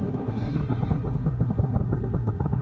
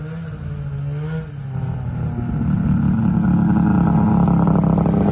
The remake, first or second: first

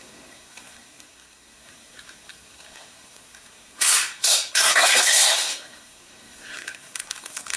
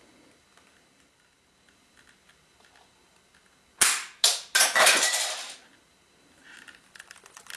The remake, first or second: first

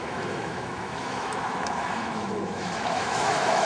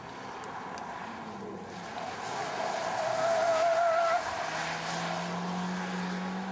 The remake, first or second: first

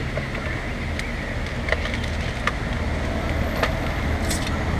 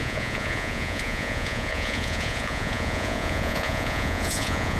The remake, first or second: second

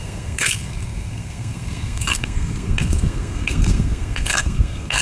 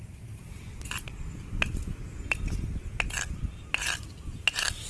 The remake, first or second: first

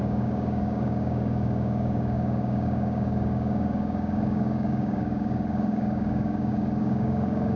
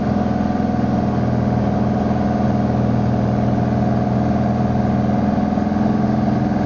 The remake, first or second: first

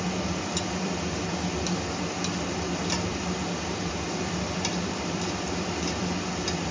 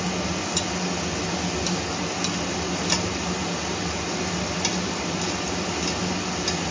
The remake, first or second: first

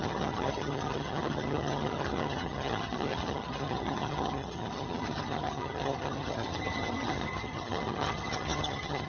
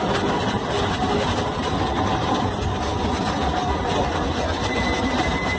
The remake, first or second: first